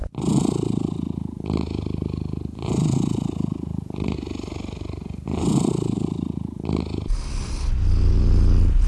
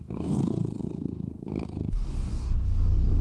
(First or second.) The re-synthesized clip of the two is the second